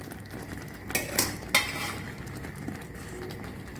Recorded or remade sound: recorded